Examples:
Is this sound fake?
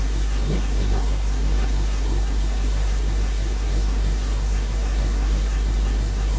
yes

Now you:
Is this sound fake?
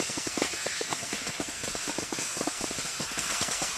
yes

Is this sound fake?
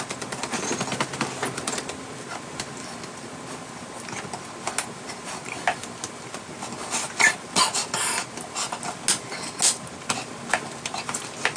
no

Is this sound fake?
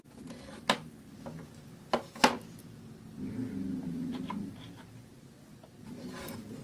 no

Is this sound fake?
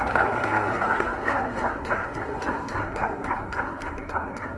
yes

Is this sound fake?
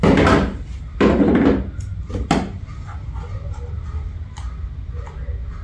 no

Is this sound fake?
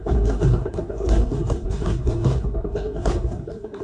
yes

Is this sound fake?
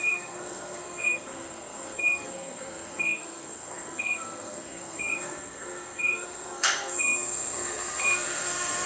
yes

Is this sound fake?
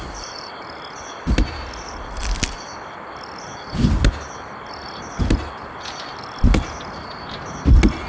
no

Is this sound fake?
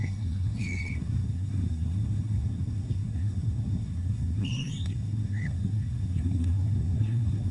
yes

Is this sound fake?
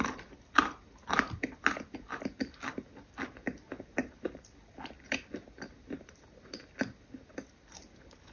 no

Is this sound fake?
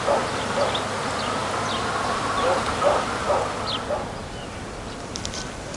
no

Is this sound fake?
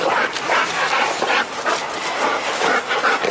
no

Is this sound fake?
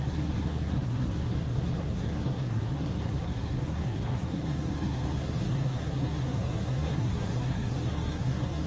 yes